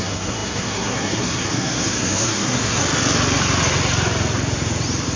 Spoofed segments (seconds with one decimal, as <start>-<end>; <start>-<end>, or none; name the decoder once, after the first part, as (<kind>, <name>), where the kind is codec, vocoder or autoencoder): 0.0-2.8 (codec, SNAC)